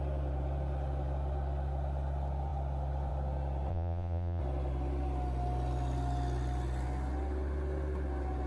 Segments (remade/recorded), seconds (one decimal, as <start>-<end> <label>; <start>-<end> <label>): 0.0-3.7 recorded; 3.7-4.4 remade; 4.4-8.5 recorded